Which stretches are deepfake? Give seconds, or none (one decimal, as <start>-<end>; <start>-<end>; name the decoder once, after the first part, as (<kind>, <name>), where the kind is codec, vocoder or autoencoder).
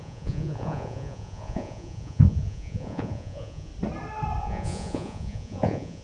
0.0-3.7 (vocoder, Vocos); 4.4-6.0